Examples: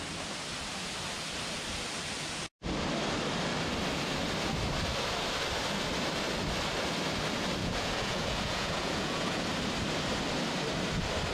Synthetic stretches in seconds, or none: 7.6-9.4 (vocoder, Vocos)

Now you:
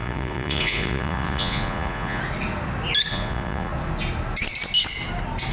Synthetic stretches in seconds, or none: 0.0-2.2 (vocoder, Vocos); 3.1-3.7